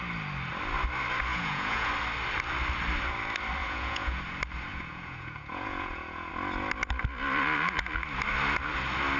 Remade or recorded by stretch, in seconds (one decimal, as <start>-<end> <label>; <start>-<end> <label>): 0.0-1.3 recorded; 1.3-1.9 remade; 1.9-3.6 recorded; 3.6-4.2 remade; 4.2-4.7 recorded; 4.7-6.3 remade; 6.3-9.2 recorded